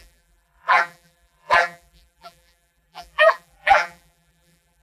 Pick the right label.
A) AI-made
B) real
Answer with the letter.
A